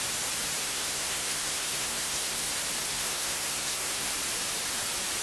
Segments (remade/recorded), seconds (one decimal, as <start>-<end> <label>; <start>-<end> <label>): 0.0-0.6 recorded; 0.6-2.5 remade; 2.5-2.9 recorded; 2.9-4.1 remade; 4.1-5.2 recorded